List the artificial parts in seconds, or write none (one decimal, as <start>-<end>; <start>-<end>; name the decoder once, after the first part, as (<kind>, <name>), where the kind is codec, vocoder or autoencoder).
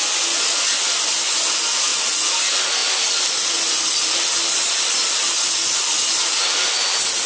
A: none